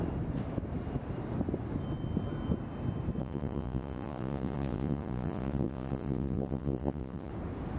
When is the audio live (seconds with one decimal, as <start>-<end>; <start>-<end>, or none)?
0.0-3.2; 7.3-7.8